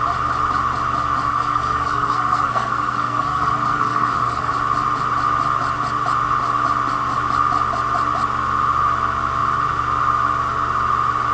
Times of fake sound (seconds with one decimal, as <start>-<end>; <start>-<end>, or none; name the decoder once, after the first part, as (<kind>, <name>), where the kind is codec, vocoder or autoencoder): 1.3-4.5 (codec, SNAC)